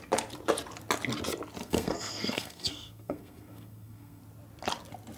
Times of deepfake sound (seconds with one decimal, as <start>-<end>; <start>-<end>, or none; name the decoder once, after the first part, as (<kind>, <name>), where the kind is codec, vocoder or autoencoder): 1.6-4.2 (codec, SNAC)